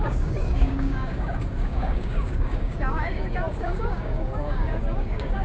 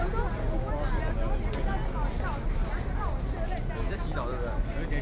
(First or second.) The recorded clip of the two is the second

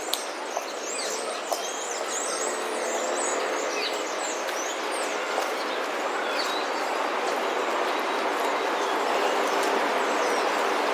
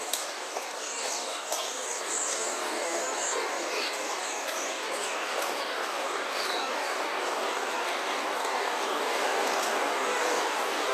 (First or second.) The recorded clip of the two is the first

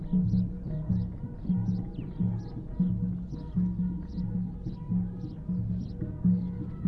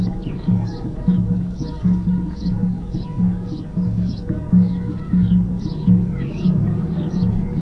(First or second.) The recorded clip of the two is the first